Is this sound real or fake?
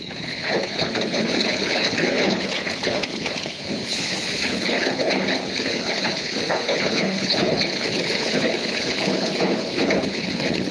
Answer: fake